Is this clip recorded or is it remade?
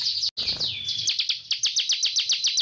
recorded